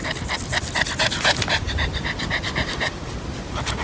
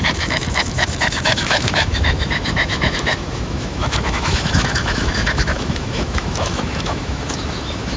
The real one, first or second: first